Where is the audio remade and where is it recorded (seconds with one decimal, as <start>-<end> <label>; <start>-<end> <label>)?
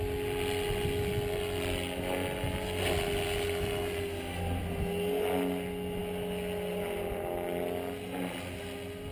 0.0-9.1 recorded